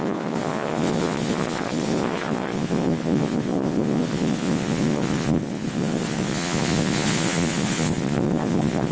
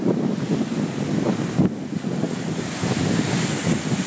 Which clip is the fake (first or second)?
first